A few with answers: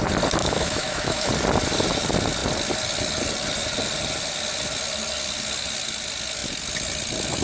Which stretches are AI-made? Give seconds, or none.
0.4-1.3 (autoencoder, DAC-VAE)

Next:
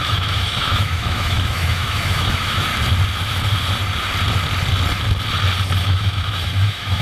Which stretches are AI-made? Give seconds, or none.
0.0-2.7 (autoencoder, DAC-VAE); 5.8-7.0

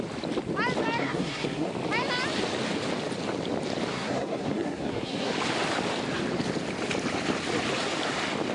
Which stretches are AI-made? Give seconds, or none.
1.0-1.7 (codec, SNAC); 3.9-5.3